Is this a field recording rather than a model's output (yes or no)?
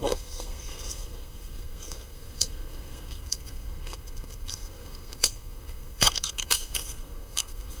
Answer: no